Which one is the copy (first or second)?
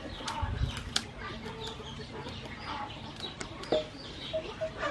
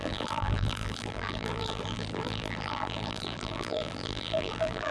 second